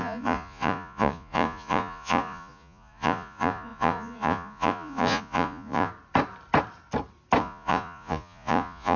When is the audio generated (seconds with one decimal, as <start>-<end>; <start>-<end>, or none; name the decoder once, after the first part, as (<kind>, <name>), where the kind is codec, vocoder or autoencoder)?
0.0-5.9 (vocoder, Vocos); 7.4-9.0